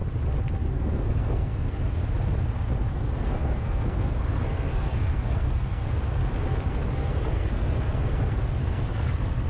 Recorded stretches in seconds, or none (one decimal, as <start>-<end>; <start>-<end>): 0.0-0.7; 2.0-2.9; 6.2-6.7